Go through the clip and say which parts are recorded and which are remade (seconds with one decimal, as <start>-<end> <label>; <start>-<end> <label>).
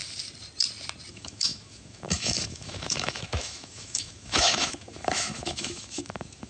0.0-1.1 recorded; 1.1-6.5 remade